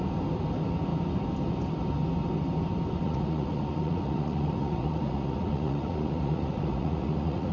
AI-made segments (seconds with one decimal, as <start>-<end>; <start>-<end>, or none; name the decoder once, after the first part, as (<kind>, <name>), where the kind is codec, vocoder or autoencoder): 3.0-7.5 (vocoder, Vocos)